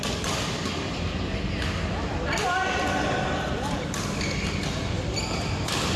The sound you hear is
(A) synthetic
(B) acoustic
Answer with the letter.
B